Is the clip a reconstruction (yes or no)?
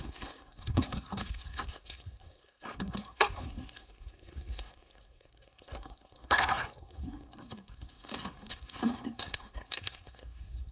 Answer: yes